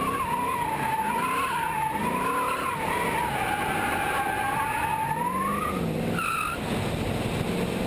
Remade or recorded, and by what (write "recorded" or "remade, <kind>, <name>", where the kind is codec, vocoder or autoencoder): recorded